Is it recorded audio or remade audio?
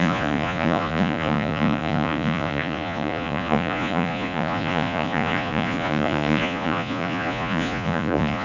remade